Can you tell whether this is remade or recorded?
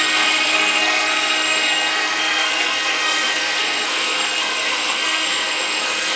remade